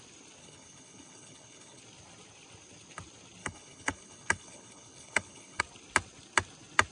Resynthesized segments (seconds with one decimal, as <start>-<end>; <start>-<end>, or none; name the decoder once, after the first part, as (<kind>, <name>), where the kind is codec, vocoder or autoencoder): 0.4-1.8 (codec, HILCodec); 3.4-5.6